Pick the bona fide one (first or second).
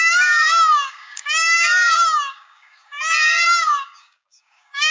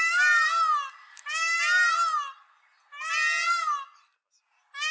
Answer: second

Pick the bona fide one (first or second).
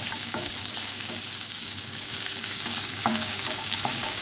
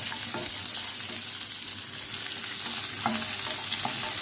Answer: second